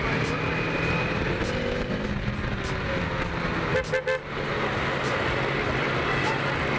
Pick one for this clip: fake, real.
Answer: real